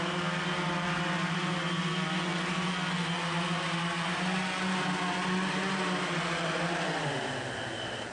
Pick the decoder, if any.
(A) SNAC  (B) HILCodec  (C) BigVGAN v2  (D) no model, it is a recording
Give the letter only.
D